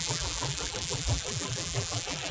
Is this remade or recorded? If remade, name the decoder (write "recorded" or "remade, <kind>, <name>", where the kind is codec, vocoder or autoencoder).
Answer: remade, vocoder, BigVGAN v2